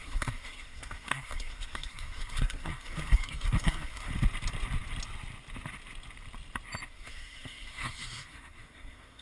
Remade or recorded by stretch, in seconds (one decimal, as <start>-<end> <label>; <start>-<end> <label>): 0.0-4.1 remade; 4.1-6.9 recorded; 6.9-9.2 remade